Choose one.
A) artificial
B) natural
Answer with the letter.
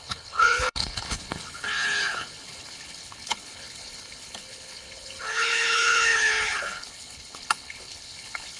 A